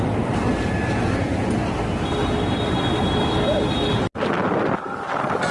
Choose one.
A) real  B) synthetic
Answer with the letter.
A